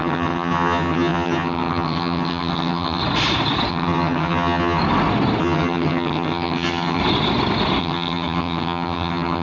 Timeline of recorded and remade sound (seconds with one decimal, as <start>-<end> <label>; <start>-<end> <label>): 0.0-3.0 remade; 3.0-3.7 recorded; 3.7-4.8 remade; 4.8-5.4 recorded; 5.4-7.0 remade; 7.0-7.8 recorded; 7.8-9.4 remade